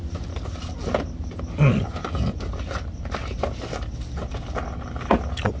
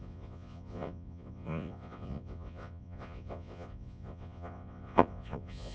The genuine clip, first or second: first